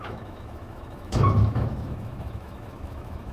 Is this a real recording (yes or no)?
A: no